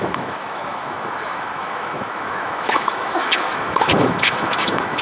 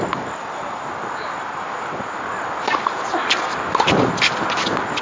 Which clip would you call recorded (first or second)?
second